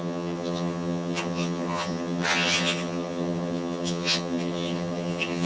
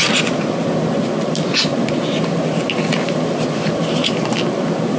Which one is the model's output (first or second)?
first